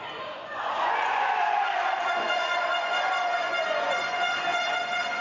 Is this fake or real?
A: fake